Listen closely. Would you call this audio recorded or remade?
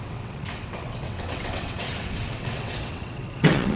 remade